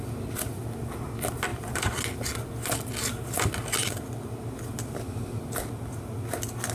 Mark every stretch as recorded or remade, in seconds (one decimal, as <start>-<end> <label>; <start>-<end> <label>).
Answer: 0.0-6.7 recorded